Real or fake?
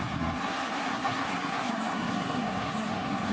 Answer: fake